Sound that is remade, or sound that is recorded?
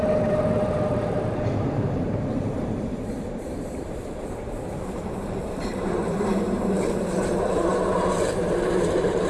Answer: remade